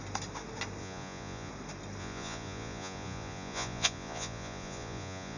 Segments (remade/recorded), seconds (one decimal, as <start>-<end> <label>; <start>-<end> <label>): 0.0-0.8 recorded; 0.8-1.5 remade; 1.5-2.0 recorded; 2.0-5.4 remade